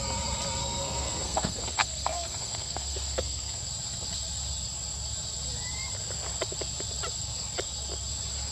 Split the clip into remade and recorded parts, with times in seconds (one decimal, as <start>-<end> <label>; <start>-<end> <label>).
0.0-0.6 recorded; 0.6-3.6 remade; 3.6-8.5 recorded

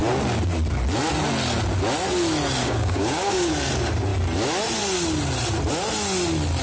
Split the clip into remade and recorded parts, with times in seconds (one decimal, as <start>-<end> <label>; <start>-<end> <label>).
0.0-2.6 recorded; 2.6-3.5 remade; 3.5-6.6 recorded

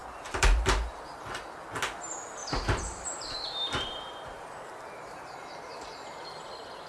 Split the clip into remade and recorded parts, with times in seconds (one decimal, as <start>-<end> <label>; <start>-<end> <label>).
0.0-1.1 remade; 1.1-2.4 recorded; 2.4-4.7 remade; 4.7-6.9 recorded